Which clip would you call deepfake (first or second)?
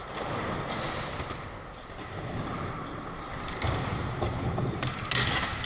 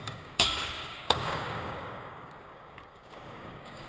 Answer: second